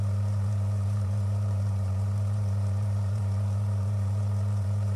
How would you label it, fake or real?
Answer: fake